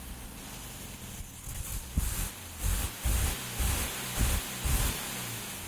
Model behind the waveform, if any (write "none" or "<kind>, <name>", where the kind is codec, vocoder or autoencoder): none